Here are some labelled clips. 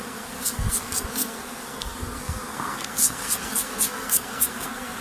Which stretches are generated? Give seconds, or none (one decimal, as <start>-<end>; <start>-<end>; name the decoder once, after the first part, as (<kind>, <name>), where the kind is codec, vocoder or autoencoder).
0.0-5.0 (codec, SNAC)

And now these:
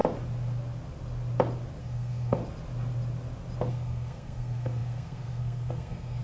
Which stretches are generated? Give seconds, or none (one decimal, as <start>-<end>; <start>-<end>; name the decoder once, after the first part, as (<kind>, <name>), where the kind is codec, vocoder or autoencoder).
1.8-2.4 (codec, SNAC); 3.7-6.2

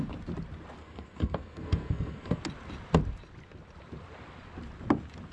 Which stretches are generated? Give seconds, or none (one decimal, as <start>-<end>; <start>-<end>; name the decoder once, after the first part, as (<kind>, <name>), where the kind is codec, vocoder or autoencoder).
0.8-2.4 (codec, SNAC)

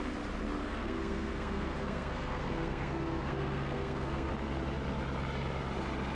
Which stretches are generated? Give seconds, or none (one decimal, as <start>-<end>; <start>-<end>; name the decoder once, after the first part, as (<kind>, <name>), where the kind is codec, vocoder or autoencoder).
0.6-4.3 (codec, SNAC)

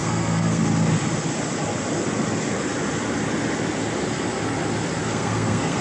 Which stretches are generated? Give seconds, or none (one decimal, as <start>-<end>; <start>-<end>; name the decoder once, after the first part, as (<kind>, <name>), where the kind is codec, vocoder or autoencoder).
0.0-0.6 (codec, SNAC); 5.0-5.8

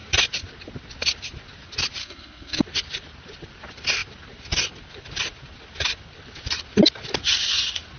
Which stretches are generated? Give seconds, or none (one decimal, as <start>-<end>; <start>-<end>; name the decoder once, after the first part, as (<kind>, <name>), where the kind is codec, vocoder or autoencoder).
2.0-2.6 (codec, SNAC)

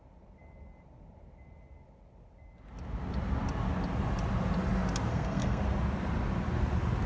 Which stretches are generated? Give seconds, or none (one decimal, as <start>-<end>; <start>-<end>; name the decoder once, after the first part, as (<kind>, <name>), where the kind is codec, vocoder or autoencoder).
5.1-5.6 (codec, SNAC)

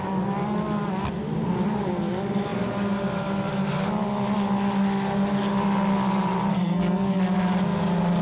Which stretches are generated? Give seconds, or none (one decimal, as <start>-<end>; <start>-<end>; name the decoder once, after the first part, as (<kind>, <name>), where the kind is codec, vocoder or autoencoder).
6.5-7.2 (codec, SNAC)